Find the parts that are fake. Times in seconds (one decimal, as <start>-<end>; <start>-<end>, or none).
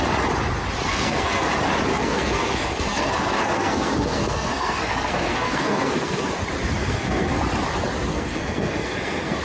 0.9-1.5; 1.9-6.3; 6.8-7.4; 8.1-9.4